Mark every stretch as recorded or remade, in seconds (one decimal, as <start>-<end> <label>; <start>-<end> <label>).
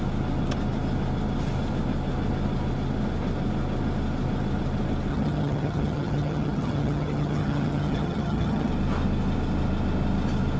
0.0-5.1 recorded; 5.1-8.7 remade; 8.7-10.6 recorded